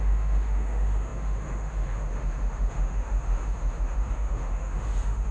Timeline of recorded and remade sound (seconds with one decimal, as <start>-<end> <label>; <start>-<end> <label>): 0.0-5.3 remade